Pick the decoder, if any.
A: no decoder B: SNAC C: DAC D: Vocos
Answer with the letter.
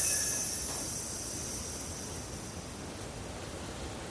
A